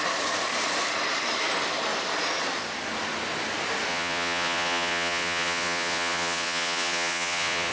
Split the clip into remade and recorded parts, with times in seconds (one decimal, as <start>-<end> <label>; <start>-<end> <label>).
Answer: 0.0-3.9 recorded; 3.9-7.7 remade